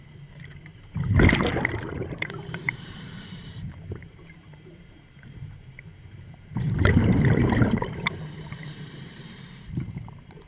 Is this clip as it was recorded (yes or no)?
no